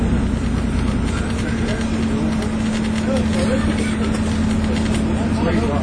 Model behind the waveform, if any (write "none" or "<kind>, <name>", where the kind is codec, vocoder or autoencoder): none